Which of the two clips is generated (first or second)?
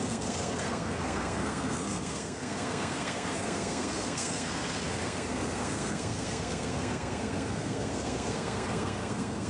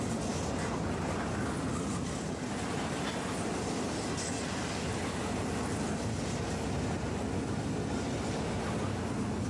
first